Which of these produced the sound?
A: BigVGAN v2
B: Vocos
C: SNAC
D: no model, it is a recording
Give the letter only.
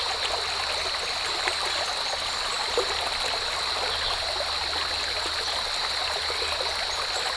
D